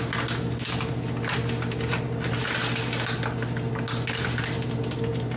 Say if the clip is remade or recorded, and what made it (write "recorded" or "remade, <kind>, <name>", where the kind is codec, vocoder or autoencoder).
recorded